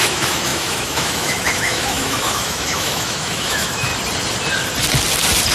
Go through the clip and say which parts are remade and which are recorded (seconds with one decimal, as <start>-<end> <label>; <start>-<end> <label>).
0.0-3.9 remade; 3.9-5.5 recorded